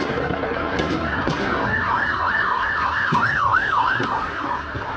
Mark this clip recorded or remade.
remade